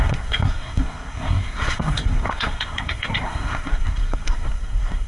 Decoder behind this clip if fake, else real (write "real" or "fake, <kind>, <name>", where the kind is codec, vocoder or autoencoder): fake, codec, SNAC